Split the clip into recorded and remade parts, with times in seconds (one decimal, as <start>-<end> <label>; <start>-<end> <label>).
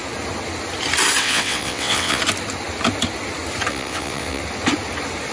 0.0-1.2 recorded; 1.2-2.2 remade; 2.2-3.7 recorded; 3.7-4.4 remade; 4.4-5.3 recorded